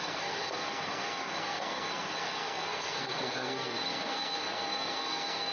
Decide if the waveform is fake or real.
fake